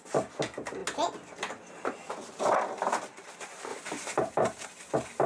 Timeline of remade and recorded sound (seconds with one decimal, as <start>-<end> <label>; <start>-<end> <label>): 0.0-0.8 remade; 0.8-2.6 recorded; 2.6-5.3 remade